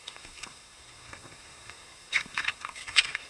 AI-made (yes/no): yes